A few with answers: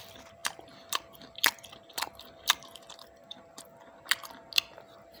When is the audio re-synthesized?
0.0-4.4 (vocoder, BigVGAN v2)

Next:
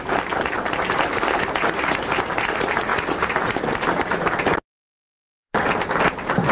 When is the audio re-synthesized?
2.9-3.7 (vocoder, BigVGAN v2); 5.1-5.7